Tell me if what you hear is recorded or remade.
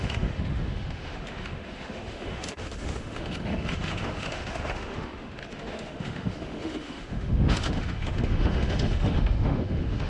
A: remade